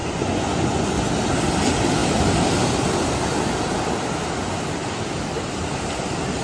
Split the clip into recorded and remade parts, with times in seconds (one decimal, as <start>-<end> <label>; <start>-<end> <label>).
0.0-1.0 remade; 1.0-6.4 recorded